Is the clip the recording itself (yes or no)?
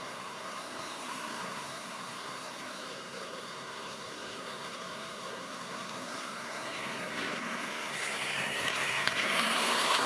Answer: no